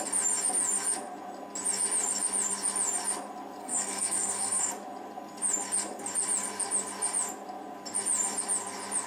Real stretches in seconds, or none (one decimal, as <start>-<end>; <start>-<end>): 0.0-3.6; 4.7-9.1